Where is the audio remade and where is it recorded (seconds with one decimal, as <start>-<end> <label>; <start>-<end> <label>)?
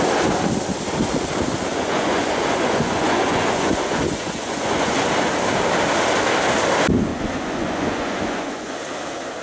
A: 0.0-1.7 recorded; 1.7-5.1 remade; 5.1-7.1 recorded; 7.1-8.8 remade; 8.8-9.4 recorded